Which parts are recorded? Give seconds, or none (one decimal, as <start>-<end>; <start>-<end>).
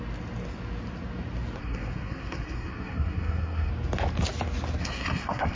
0.0-1.6; 3.7-4.8